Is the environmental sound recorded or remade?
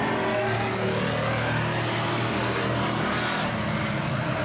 recorded